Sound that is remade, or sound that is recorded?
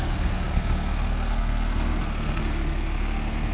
remade